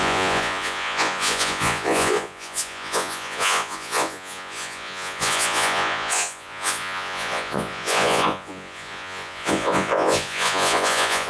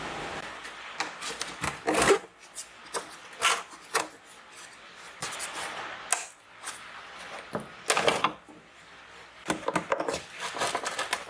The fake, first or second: first